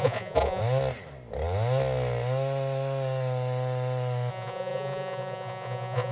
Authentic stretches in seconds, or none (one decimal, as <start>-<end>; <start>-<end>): 0.6-4.3